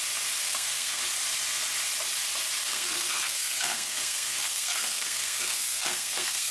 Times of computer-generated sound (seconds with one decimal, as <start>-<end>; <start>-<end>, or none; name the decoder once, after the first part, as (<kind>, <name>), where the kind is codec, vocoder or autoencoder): 0.4-1.0 (codec, SNAC); 2.7-6.5